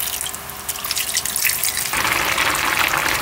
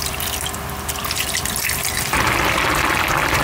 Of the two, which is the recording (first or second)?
first